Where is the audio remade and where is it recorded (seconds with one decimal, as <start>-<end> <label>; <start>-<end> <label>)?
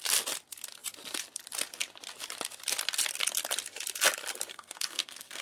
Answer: 0.0-4.5 recorded; 4.5-5.4 remade